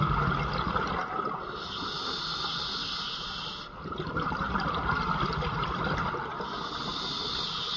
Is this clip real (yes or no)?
yes